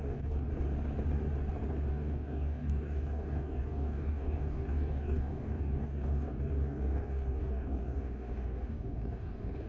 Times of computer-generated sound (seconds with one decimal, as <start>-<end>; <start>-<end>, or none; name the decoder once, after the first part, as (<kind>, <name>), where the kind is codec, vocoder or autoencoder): 0.0-0.5 (codec, DAC); 1.9-9.7